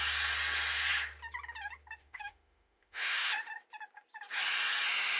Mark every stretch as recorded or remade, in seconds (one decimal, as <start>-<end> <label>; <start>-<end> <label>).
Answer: 0.0-2.0 recorded; 2.0-3.3 remade; 3.3-5.2 recorded